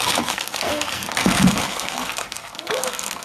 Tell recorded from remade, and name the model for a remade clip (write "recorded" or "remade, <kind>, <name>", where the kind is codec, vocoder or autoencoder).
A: remade, codec, SNAC